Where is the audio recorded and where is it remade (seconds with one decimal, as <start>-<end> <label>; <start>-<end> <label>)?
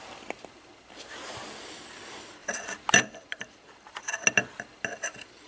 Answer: 0.0-5.5 recorded